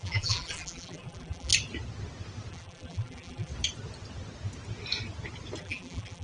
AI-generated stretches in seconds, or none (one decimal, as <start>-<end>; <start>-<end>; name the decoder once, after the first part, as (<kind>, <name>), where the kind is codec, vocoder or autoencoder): 0.0-1.5 (vocoder, BigVGAN v2); 2.5-3.5; 5.6-6.2